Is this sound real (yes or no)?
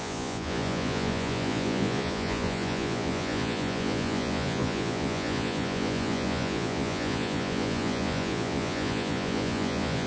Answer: no